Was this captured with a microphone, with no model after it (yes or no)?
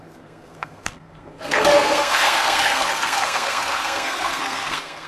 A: no